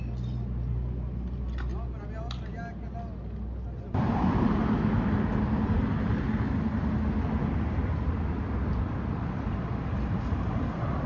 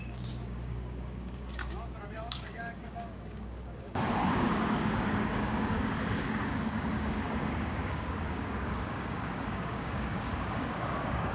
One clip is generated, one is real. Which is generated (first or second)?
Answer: second